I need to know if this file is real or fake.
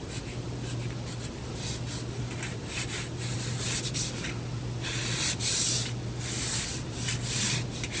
real